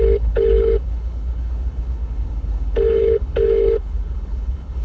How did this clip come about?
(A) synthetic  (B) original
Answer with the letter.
A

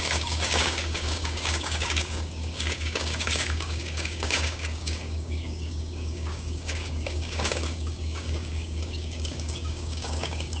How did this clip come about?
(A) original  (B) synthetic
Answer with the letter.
B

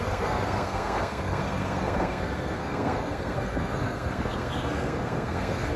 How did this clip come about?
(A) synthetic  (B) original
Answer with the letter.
A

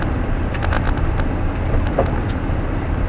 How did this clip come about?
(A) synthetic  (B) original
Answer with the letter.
A